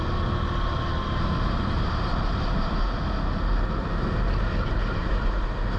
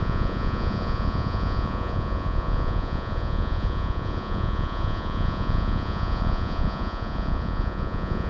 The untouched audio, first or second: first